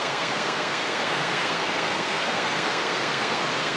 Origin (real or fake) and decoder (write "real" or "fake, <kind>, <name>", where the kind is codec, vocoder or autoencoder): fake, codec, SNAC